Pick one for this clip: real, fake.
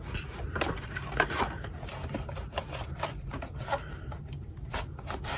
fake